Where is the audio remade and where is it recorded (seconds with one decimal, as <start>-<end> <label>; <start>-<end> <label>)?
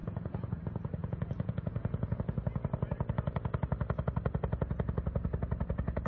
0.0-0.6 remade; 0.6-1.0 recorded; 1.0-2.2 remade; 2.2-6.1 recorded